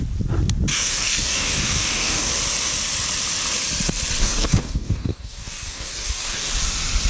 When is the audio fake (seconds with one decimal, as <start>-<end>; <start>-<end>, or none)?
0.7-2.3; 4.2-6.5